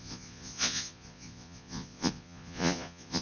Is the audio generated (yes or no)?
yes